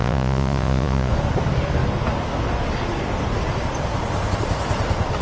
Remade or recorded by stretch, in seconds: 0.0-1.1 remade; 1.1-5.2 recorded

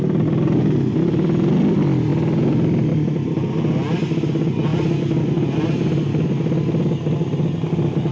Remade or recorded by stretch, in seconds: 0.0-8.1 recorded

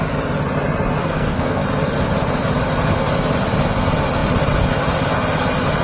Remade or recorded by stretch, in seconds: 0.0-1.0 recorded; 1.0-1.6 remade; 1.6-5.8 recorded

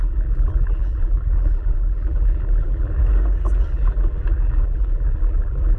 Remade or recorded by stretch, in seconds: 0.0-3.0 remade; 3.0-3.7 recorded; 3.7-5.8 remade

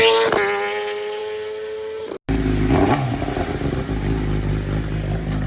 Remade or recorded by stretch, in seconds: 0.0-5.5 recorded

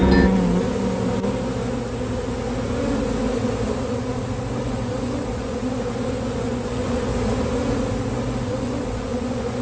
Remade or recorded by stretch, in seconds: 0.0-4.6 recorded; 4.6-5.6 remade; 5.6-6.1 recorded; 6.1-7.1 remade; 7.1-8.4 recorded; 8.4-9.6 remade